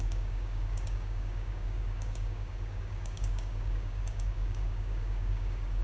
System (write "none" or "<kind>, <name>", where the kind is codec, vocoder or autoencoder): codec, DAC